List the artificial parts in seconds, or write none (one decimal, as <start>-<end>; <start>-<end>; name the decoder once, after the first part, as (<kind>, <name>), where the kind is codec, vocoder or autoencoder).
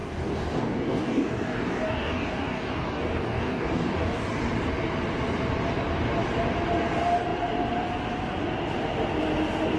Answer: 0.0-4.2 (codec, DAC)